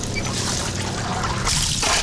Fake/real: real